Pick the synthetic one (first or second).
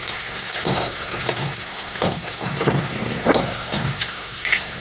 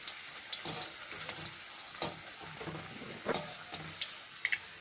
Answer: first